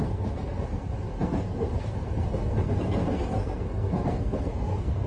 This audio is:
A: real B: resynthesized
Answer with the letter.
B